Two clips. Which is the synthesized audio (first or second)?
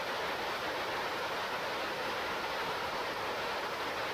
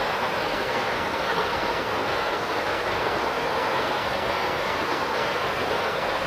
second